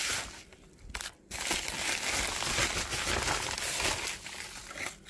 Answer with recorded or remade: recorded